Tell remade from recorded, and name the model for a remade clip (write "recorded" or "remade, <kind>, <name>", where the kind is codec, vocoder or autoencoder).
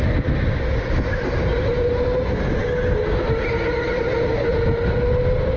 recorded